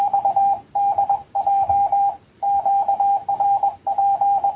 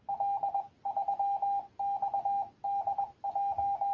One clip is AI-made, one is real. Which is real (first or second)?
second